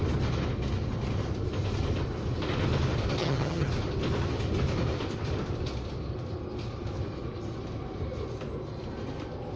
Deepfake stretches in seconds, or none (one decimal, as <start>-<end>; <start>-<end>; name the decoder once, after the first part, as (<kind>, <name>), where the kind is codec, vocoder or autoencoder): 3.2-3.7 (vocoder, HiFi-GAN)